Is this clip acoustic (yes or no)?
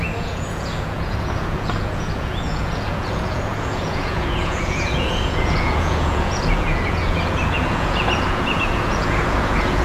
no